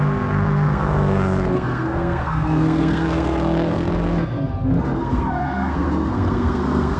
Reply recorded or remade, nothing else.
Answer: remade